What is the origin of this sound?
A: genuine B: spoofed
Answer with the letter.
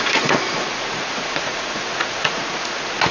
B